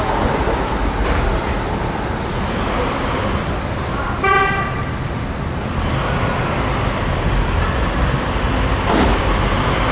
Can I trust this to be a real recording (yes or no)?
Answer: yes